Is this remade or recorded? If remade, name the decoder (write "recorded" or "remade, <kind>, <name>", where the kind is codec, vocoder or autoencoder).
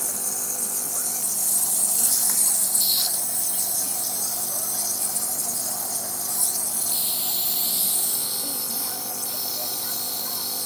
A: recorded